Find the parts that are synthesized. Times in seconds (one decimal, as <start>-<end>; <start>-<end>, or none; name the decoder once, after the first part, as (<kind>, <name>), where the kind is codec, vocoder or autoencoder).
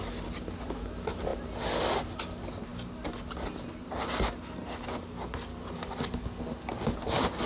none